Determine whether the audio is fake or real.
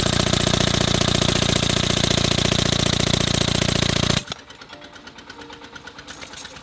real